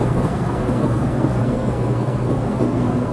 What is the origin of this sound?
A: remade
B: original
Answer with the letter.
A